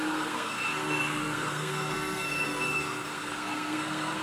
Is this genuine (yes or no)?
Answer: no